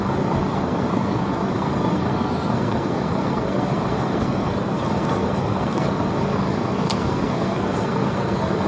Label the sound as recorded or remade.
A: remade